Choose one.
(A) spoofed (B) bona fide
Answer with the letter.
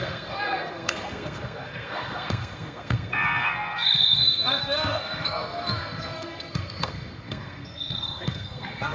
A